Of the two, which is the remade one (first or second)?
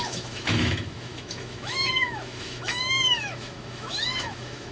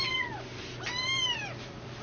first